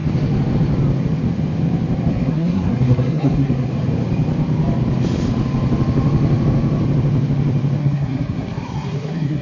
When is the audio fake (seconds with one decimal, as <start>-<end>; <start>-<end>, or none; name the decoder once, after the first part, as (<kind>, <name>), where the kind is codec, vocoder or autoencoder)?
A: 2.1-3.7 (codec, SNAC); 7.8-9.4